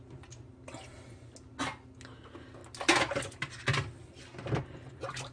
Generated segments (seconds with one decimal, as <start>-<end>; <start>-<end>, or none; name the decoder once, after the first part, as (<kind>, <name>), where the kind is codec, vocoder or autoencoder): none